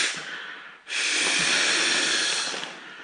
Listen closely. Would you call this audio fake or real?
real